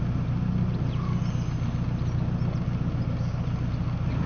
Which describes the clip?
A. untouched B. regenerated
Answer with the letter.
A